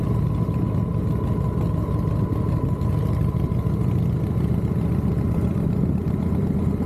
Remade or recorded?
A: recorded